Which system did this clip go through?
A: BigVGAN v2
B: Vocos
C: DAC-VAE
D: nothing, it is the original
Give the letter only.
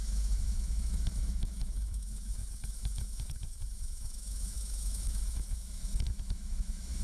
C